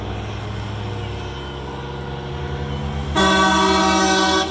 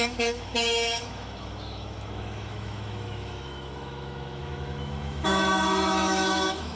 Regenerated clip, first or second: second